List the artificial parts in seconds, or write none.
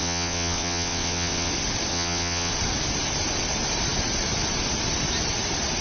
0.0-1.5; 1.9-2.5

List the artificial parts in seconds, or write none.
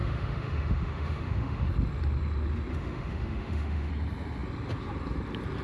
0.0-1.7; 2.7-3.9